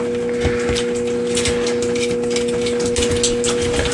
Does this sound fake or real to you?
real